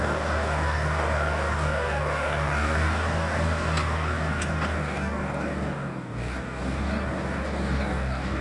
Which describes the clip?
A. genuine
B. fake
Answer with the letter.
B